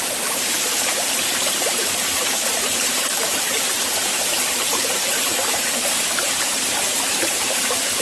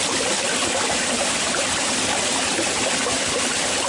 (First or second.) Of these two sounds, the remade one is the first